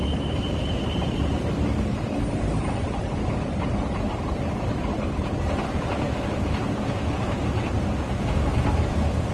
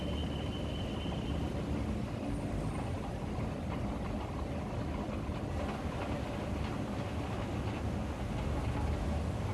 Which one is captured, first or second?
second